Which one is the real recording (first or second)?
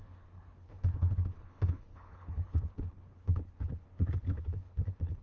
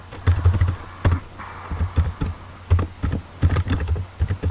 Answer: second